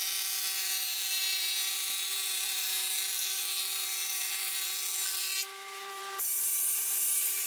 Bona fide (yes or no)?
no